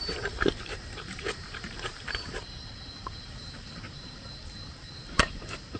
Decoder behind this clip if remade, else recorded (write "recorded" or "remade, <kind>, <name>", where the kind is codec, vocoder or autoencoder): remade, vocoder, BigVGAN v2